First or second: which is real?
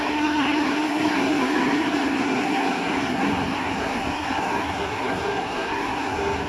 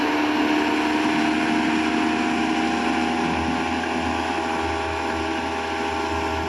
second